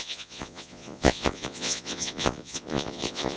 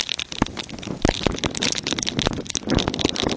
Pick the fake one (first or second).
first